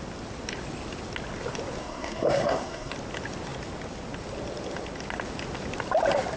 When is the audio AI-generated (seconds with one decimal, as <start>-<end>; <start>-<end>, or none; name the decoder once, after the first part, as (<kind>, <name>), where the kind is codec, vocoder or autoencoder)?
1.8-2.9 (codec, SNAC)